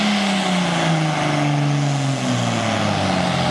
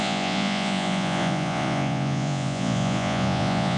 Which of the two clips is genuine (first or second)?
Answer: first